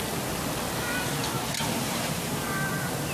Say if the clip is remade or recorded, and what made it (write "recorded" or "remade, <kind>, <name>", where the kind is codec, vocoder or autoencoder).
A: recorded